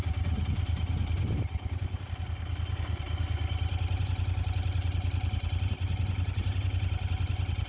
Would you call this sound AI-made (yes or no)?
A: no